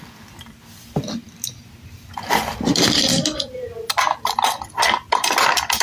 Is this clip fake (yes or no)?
no